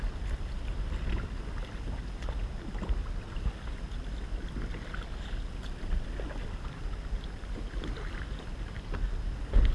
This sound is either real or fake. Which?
real